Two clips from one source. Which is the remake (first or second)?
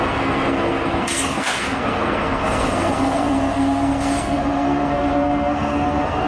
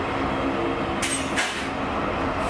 first